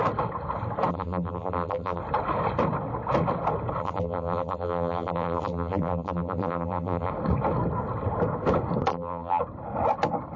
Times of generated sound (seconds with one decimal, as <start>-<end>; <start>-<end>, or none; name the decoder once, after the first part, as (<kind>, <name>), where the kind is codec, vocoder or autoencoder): 0.9-2.0 (vocoder, BigVGAN v2); 3.8-7.1; 8.9-9.4